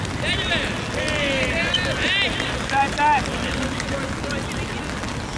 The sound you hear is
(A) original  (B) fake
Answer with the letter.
A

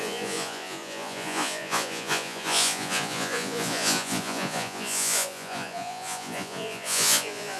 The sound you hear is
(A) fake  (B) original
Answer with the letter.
A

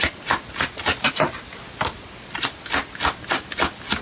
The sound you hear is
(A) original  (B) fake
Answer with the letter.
A